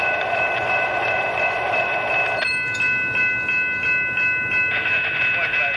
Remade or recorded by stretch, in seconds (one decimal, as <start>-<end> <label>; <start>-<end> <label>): 0.0-1.9 remade; 1.9-5.8 recorded